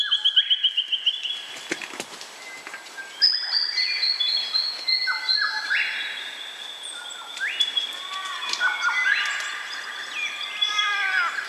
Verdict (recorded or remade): recorded